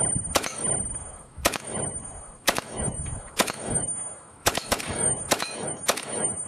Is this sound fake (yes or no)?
yes